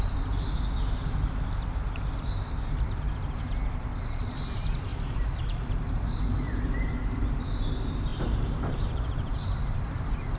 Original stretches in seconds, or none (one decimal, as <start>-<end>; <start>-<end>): 0.0-4.9; 6.9-8.1; 9.6-10.4